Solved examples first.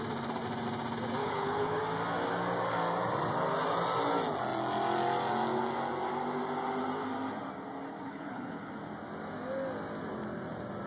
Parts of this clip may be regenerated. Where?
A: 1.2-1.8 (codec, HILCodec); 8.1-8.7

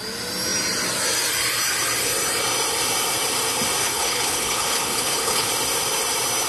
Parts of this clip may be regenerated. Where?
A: 3.8-5.5 (codec, HILCodec)

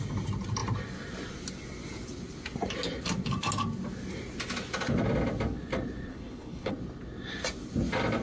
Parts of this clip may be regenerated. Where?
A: 6.1-6.7 (codec, HILCodec)

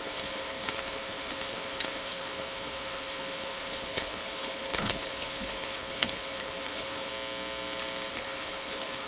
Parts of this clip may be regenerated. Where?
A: 0.0-7.1 (codec, HILCodec); 8.1-9.1

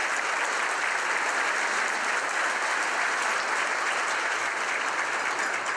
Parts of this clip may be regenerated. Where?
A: none

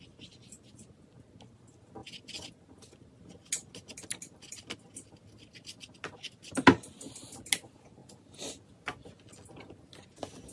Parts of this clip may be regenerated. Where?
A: none

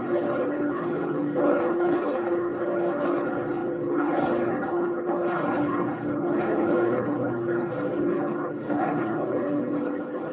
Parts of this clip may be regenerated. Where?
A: 0.0-10.3 (codec, HILCodec)